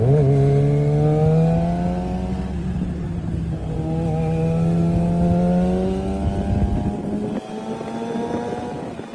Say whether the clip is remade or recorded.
recorded